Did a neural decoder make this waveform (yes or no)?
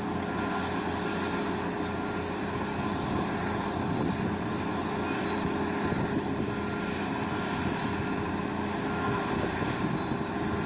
no